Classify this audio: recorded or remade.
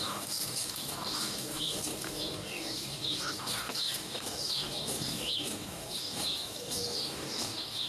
remade